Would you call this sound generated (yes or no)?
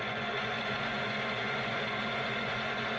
yes